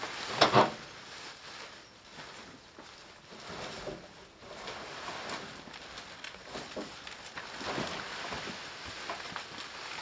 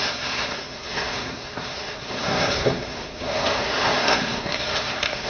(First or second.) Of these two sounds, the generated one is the second